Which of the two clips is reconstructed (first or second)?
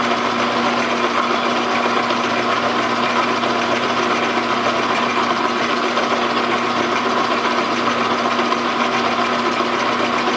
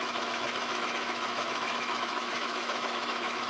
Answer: second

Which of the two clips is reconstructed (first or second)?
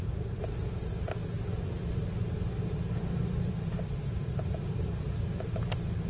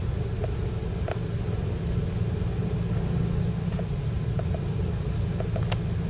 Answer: first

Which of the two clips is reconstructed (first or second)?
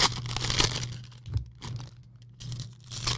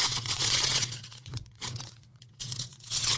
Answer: second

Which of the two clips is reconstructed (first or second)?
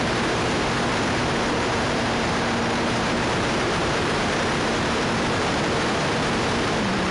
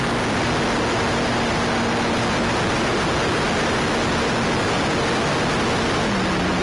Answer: first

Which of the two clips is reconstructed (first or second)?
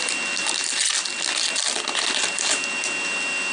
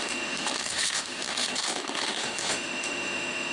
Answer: second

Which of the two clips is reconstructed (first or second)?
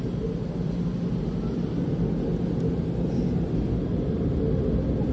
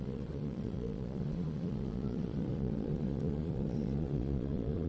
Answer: second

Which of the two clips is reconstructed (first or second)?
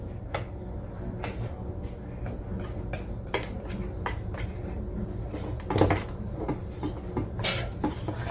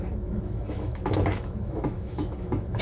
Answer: second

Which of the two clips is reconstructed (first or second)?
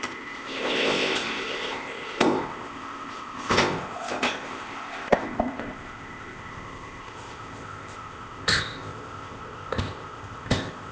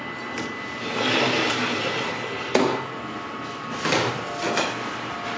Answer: first